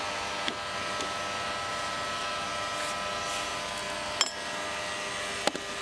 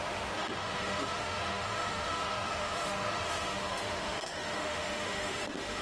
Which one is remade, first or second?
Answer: second